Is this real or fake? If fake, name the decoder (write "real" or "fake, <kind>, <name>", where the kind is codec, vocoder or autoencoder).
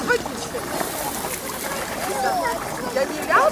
real